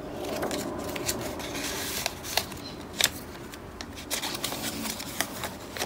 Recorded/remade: recorded